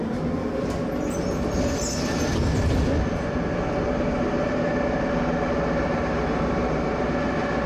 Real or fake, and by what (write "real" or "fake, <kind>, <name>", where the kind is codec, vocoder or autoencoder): real